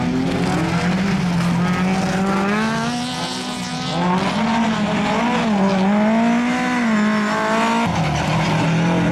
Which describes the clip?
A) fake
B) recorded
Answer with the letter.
B